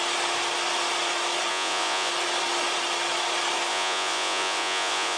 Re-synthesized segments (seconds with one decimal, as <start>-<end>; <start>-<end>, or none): 1.5-2.1; 3.7-5.2